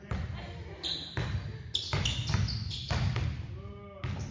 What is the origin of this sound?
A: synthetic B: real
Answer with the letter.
B